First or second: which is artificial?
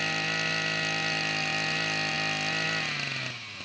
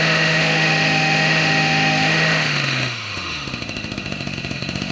second